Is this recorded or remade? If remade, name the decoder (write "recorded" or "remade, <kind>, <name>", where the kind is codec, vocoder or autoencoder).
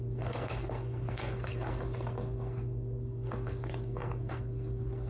remade, codec, SNAC